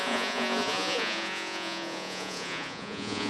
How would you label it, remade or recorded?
remade